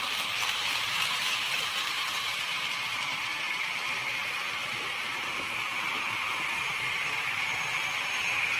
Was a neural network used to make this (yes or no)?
yes